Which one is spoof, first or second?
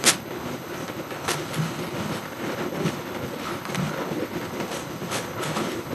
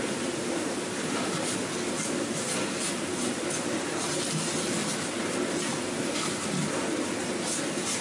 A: first